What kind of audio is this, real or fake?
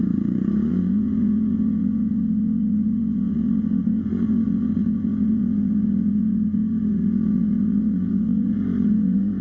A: fake